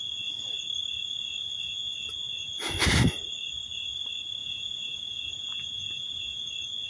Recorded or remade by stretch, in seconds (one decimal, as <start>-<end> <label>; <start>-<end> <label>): 0.0-4.4 recorded; 4.4-6.5 remade; 6.5-6.9 recorded